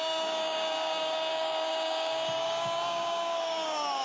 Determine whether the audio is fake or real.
fake